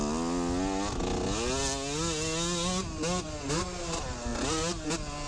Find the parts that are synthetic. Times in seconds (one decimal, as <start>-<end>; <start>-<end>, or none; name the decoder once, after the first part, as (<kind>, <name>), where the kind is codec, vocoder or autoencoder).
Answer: none